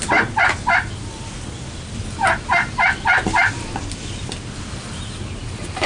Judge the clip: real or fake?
real